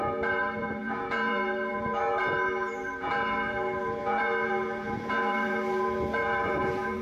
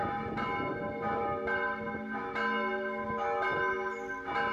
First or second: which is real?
second